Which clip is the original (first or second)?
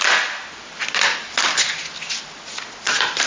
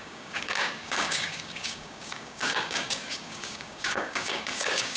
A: first